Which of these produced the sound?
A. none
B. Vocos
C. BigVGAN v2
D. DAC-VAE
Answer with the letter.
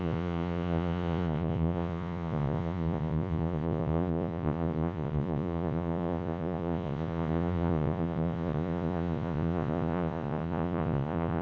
B